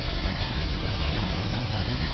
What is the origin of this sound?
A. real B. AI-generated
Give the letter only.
B